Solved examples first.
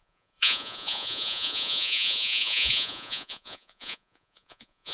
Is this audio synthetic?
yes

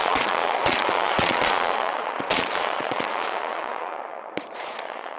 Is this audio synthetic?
yes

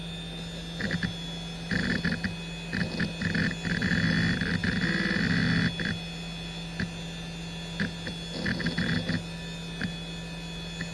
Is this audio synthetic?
no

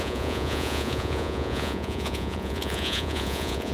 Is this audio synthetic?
yes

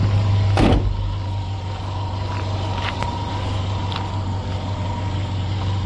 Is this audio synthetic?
no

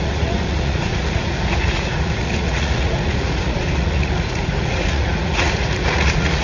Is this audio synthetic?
yes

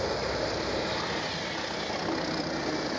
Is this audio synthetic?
no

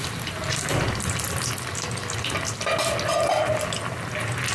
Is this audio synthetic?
no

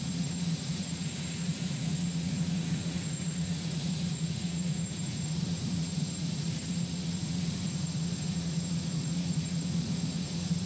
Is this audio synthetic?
yes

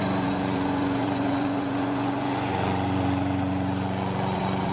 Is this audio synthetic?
yes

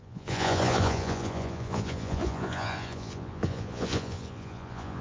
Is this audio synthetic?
yes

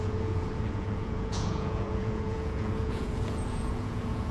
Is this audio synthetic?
yes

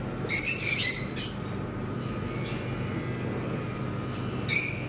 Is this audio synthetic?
no